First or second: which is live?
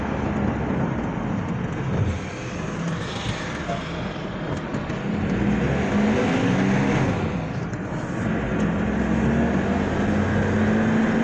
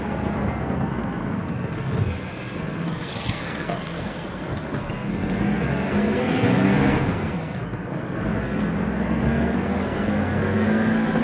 first